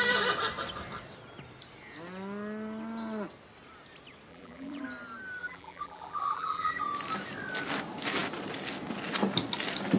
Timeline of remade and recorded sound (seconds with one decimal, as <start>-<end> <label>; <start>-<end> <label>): 0.0-4.3 recorded; 4.3-4.8 remade; 4.8-5.4 recorded; 5.4-6.8 remade; 6.8-10.0 recorded